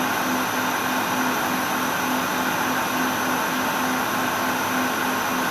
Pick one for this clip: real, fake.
real